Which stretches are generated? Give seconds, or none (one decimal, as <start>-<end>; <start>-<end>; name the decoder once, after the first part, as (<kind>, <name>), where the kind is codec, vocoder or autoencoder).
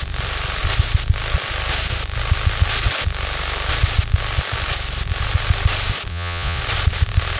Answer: 6.1-6.6 (vocoder, Vocos)